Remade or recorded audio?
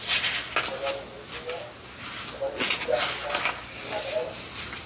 recorded